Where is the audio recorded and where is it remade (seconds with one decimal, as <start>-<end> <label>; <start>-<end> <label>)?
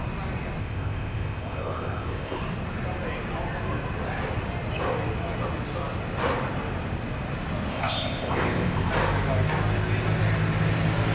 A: 0.0-0.6 recorded; 0.6-2.4 remade; 2.4-7.7 recorded; 7.7-8.9 remade; 8.9-11.1 recorded